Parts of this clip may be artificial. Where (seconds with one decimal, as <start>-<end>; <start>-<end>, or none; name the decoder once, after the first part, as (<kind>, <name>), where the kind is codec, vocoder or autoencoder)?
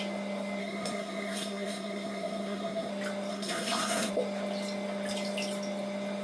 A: 0.6-2.9 (codec, SNAC); 3.3-4.1